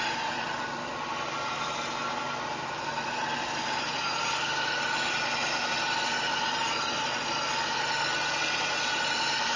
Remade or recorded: recorded